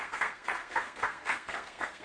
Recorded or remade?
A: remade